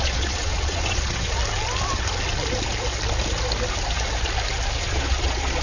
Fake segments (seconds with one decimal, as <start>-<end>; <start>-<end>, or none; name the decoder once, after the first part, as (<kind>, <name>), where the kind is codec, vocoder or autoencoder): 0.0-1.4 (vocoder, Vocos); 4.8-5.6